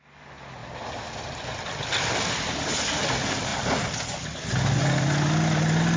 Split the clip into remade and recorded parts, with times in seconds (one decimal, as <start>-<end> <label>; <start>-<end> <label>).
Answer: 0.0-6.0 recorded